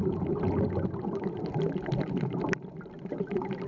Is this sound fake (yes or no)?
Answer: no